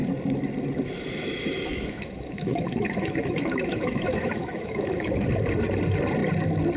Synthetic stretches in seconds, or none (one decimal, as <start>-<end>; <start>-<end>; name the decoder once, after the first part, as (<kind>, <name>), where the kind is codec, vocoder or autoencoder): 1.7-5.1 (autoencoder, DAC-VAE)

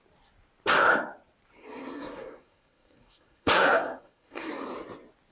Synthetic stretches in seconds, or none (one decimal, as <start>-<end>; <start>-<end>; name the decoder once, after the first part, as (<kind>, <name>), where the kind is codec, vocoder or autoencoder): 1.6-4.5 (codec, SNAC)

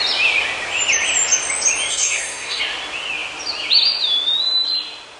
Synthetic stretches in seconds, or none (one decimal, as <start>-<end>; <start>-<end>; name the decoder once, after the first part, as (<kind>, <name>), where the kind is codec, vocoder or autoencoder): 1.9-2.6 (codec, SNAC)

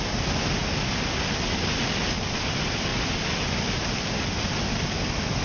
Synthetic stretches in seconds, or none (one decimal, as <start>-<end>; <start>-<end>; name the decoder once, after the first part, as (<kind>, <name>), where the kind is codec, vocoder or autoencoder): 0.6-2.0 (vocoder, BigVGAN v2); 2.9-4.5

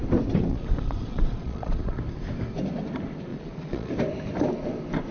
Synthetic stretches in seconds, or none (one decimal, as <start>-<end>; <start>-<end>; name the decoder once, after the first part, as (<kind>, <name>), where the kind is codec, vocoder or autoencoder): 0.5-2.0 (vocoder, Vocos); 3.3-3.9